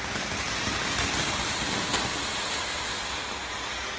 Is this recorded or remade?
recorded